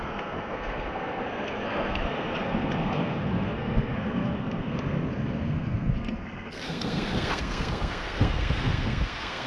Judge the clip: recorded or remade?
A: remade